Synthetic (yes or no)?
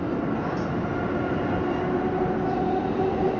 no